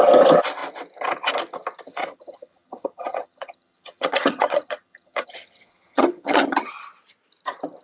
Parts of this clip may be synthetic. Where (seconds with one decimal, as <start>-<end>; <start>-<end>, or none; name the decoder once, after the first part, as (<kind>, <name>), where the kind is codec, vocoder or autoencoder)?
2.0-6.7 (vocoder, HiFi-GAN)